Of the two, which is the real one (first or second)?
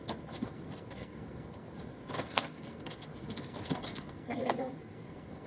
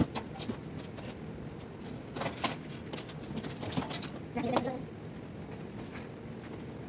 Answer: second